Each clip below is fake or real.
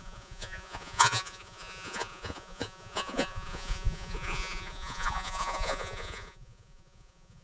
fake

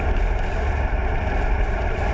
real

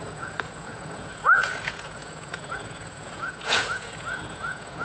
fake